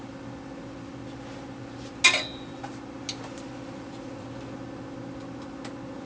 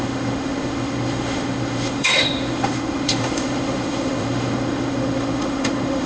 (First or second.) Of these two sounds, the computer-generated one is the second